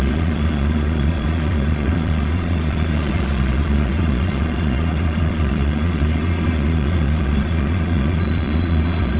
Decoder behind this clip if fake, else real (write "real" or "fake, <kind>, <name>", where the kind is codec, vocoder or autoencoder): fake, vocoder, Vocos